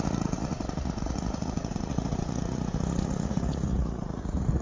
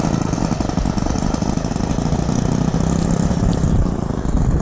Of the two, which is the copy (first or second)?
first